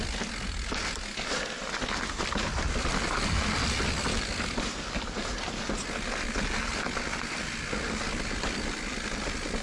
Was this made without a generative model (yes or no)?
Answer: yes